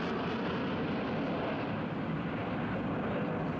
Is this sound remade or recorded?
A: recorded